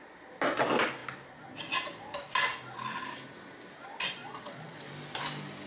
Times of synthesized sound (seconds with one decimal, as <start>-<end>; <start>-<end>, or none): 4.2-4.9